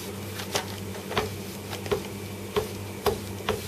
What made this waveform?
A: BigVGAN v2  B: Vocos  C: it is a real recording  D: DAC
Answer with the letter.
C